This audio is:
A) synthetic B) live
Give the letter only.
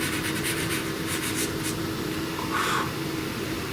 A